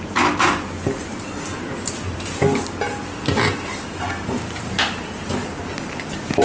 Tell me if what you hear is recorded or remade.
recorded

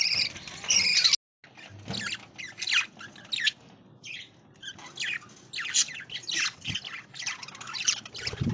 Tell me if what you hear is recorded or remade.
recorded